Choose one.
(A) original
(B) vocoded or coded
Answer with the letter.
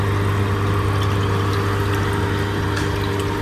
A